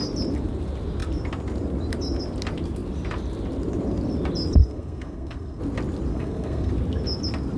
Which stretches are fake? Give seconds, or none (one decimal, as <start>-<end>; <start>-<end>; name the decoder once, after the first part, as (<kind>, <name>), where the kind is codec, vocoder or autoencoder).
4.6-5.6 (codec, SNAC); 6.1-6.7